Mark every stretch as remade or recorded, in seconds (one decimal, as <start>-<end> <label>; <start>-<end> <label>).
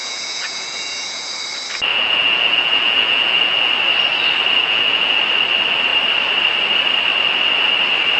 0.0-1.3 remade; 1.3-1.9 recorded; 1.9-3.7 remade; 3.7-4.6 recorded; 4.6-5.2 remade; 5.2-8.2 recorded